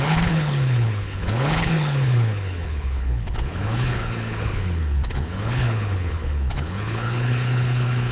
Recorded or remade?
remade